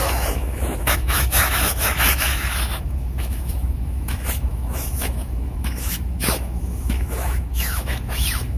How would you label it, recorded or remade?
remade